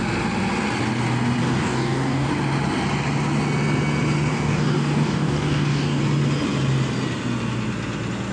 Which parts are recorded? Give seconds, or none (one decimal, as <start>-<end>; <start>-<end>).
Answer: 0.0-1.4; 2.3-4.3; 6.0-8.3